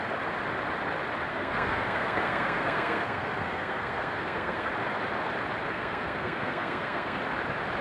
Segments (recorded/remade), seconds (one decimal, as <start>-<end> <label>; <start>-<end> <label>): 0.0-1.3 recorded; 1.3-4.7 remade; 4.7-5.7 recorded; 5.7-7.2 remade; 7.2-7.8 recorded